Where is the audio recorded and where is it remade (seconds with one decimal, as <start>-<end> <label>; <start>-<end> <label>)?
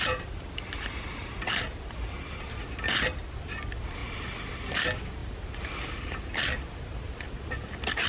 0.0-8.1 recorded